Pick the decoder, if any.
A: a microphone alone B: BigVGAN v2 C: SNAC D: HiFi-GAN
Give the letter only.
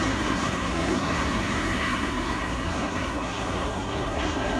C